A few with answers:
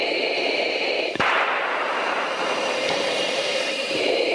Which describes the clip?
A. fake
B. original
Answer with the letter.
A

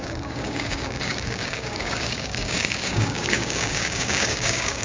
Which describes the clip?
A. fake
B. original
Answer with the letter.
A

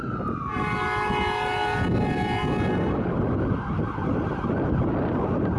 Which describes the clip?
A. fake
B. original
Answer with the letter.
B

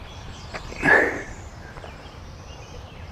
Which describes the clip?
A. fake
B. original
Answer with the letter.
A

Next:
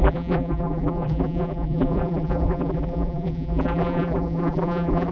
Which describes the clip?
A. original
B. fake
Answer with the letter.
B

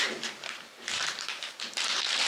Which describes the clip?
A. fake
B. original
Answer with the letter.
A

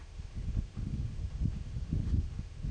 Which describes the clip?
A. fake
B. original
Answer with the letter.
A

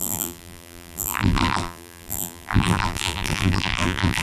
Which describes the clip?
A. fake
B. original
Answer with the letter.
A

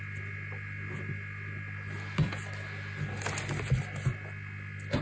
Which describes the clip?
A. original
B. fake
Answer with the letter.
A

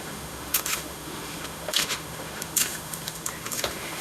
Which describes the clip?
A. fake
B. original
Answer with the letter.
A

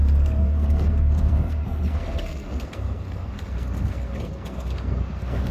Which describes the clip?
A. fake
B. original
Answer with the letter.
A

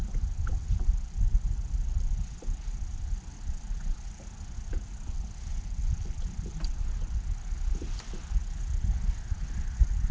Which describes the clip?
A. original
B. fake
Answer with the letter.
A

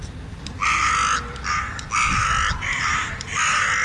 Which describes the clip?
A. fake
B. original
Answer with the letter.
B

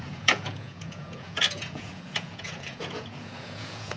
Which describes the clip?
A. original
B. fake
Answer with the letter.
B